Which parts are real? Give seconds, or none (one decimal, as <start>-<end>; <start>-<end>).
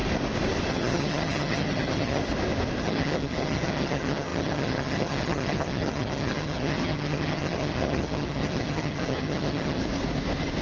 0.0-0.7; 2.2-2.8; 9.8-10.6